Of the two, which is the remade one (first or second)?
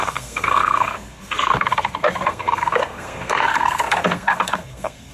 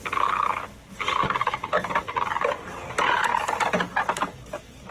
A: first